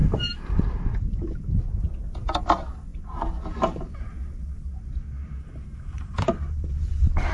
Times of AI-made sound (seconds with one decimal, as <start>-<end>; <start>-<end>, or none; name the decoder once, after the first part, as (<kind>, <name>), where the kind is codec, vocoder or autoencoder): 0.0-1.6 (vocoder, BigVGAN v2); 2.9-3.9; 5.2-7.3